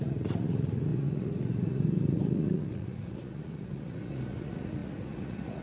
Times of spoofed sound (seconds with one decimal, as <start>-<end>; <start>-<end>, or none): 0.0-5.6